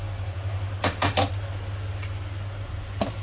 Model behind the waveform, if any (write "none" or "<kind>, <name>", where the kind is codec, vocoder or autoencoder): none